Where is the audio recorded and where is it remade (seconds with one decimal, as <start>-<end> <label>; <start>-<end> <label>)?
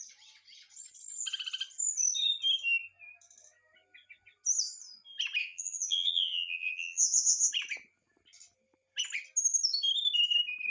0.0-5.4 recorded; 5.4-7.5 remade; 7.5-10.7 recorded